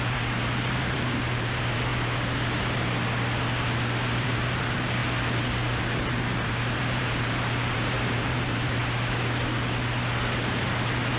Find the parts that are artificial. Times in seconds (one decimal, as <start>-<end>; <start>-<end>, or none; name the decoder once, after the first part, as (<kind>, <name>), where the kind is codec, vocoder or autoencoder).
0.0-1.9 (vocoder, BigVGAN v2); 4.2-5.0; 6.1-8.8; 10.6-11.2